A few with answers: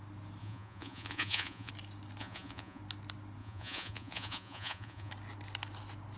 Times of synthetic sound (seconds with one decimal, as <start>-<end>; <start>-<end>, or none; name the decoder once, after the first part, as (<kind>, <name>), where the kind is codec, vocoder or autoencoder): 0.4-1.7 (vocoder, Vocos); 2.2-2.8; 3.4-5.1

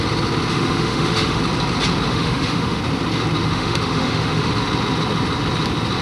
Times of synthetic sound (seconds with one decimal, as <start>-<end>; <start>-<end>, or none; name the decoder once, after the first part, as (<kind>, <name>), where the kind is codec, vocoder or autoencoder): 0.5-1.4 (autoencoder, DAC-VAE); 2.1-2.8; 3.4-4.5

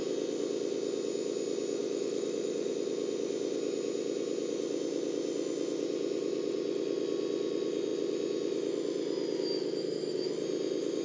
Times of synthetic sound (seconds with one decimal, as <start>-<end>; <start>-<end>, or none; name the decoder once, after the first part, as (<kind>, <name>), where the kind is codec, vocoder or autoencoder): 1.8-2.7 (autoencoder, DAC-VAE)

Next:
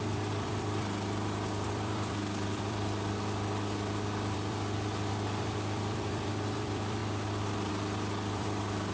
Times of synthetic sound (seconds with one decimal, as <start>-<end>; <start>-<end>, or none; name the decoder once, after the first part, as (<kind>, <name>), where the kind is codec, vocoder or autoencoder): 0.0-8.9 (vocoder, BigVGAN v2)

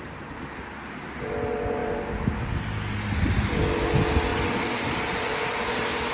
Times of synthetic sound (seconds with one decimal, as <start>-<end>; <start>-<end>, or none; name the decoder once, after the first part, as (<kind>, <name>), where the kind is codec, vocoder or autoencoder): none

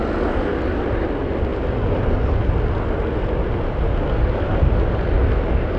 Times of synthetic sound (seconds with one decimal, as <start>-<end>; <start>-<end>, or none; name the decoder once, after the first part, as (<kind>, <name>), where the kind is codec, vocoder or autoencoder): none